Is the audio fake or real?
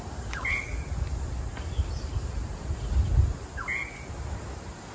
real